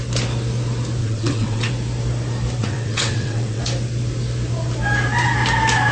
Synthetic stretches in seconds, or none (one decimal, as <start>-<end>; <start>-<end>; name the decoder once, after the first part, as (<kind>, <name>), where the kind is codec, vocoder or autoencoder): 1.0-1.7 (vocoder, WaveNeXt); 2.6-3.6

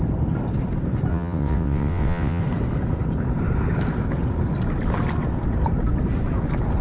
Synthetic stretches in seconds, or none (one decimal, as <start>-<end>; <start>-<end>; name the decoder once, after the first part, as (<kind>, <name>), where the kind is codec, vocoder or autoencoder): 1.1-2.4 (vocoder, WaveNeXt)

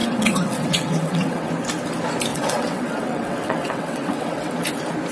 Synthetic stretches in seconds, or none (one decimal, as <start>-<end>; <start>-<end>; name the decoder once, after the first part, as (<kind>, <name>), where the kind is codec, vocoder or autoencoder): 0.0-1.5 (vocoder, WaveNeXt); 2.3-4.5

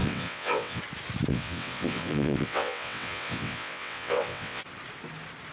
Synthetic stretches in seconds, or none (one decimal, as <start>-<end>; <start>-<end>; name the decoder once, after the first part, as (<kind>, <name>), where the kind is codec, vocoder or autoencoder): 0.0-0.8 (vocoder, WaveNeXt); 1.3-4.6

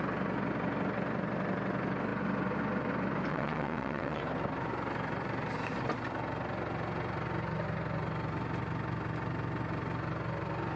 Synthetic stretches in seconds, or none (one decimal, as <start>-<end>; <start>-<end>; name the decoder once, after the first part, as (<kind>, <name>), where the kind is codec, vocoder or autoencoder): 3.3-4.2 (vocoder, WaveNeXt)

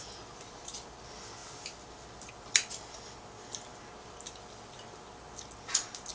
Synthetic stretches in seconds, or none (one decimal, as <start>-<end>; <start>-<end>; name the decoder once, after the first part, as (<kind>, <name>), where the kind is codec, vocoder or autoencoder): none